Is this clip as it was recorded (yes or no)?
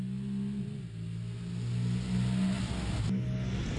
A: yes